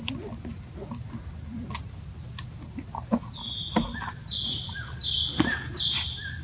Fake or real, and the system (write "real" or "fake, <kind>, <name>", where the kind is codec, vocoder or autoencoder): real